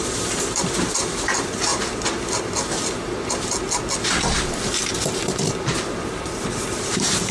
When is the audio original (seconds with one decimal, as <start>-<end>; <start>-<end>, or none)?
1.7-4.9